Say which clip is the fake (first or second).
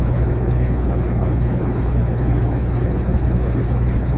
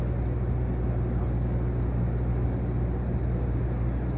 first